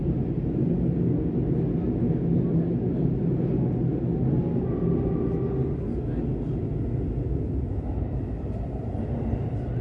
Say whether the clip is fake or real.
real